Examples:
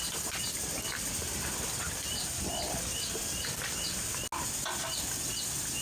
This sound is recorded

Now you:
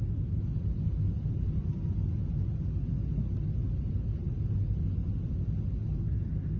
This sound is recorded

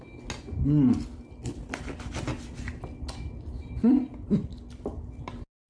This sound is recorded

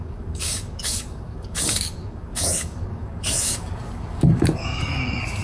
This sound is remade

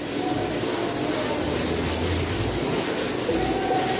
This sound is recorded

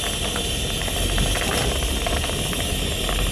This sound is recorded